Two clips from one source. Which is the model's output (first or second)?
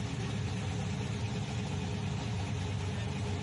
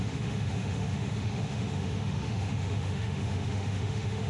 second